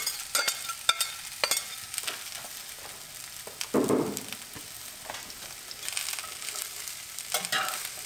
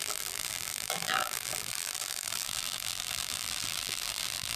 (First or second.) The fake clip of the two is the second